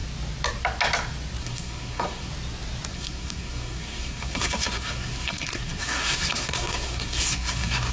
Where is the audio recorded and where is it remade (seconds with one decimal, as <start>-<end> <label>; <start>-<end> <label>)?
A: 0.0-1.4 recorded; 1.4-2.3 remade; 2.3-2.9 recorded; 2.9-7.9 remade